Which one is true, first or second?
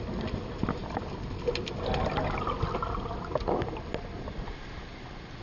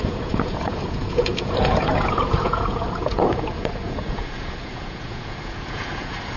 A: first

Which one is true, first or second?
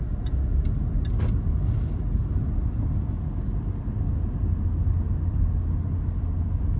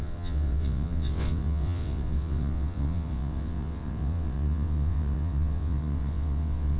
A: first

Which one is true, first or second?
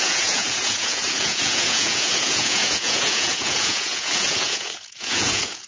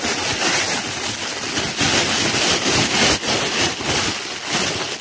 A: second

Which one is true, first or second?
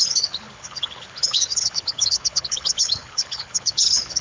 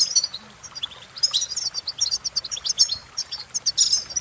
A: second